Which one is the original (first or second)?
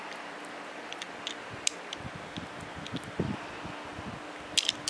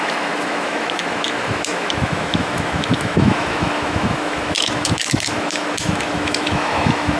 first